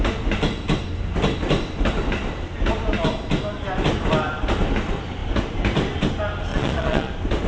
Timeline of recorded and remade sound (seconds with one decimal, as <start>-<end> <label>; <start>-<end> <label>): 0.0-6.5 recorded; 6.5-7.1 remade; 7.1-7.5 recorded